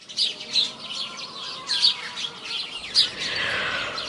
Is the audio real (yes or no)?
yes